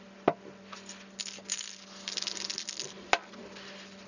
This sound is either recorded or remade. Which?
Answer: recorded